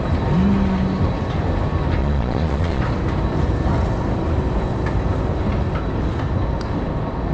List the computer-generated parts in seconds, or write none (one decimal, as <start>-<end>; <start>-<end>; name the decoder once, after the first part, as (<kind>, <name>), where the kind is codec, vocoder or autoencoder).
2.0-2.8 (vocoder, Vocos)